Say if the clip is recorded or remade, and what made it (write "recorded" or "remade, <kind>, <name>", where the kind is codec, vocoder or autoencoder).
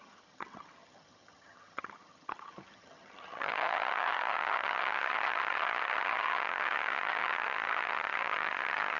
remade, vocoder, HiFi-GAN